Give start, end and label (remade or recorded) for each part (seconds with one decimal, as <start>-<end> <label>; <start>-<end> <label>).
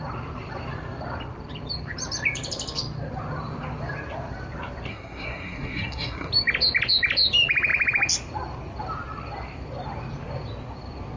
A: 0.0-4.9 recorded; 4.9-6.3 remade; 6.3-11.2 recorded